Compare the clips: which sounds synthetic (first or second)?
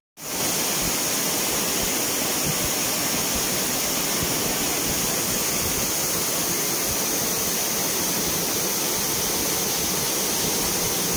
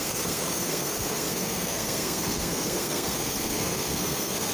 second